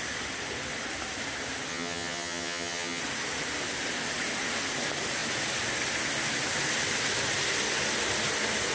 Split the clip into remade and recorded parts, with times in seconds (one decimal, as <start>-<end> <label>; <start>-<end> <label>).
0.0-1.7 recorded; 1.7-3.0 remade; 3.0-8.7 recorded

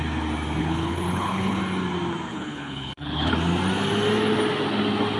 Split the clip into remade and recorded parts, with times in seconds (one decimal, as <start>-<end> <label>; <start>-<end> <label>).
0.0-0.6 recorded; 0.6-1.6 remade; 1.6-2.3 recorded; 2.3-3.3 remade; 3.3-5.2 recorded

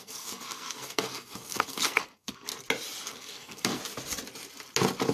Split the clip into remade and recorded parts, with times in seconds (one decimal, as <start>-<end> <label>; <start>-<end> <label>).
0.0-2.5 remade; 2.5-3.1 recorded; 3.1-3.8 remade; 3.8-5.1 recorded

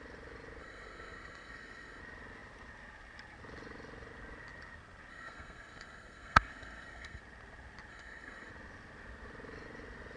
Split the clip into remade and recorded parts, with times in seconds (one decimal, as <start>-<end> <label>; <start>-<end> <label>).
0.0-0.6 recorded; 0.6-2.0 remade; 2.0-5.1 recorded; 5.1-7.2 remade; 7.2-7.9 recorded; 7.9-8.5 remade; 8.5-10.2 recorded

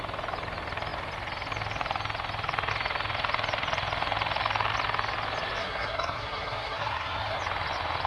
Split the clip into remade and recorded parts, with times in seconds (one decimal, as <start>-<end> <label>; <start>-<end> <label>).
0.0-5.6 recorded; 5.6-7.4 remade; 7.4-8.1 recorded

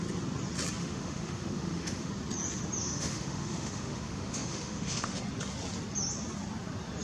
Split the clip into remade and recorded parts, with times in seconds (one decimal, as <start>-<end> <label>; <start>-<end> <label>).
0.0-0.8 recorded; 0.8-2.1 remade; 2.1-2.8 recorded; 2.8-5.2 remade; 5.2-7.0 recorded

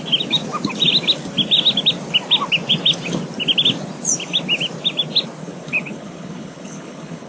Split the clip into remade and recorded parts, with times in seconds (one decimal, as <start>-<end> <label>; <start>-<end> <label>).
0.0-5.4 recorded; 5.4-7.3 remade

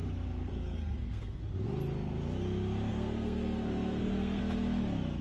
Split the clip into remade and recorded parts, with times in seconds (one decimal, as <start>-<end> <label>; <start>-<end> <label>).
0.0-0.5 recorded; 0.5-1.4 remade; 1.4-2.9 recorded; 2.9-4.4 remade; 4.4-5.2 recorded